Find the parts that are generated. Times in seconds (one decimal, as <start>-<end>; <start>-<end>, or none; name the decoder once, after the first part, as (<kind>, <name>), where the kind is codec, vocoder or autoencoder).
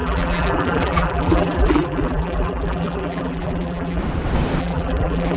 0.0-4.0 (vocoder, BigVGAN v2); 4.6-5.4